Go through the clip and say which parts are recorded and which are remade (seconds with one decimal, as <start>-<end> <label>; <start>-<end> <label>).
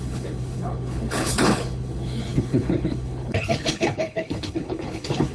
0.0-5.3 remade